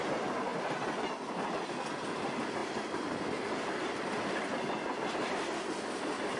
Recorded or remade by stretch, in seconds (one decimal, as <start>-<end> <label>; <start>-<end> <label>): 0.0-6.4 recorded